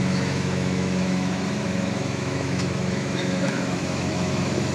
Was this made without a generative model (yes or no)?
no